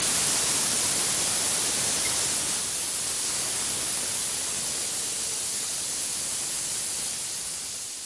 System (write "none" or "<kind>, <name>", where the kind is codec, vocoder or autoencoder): none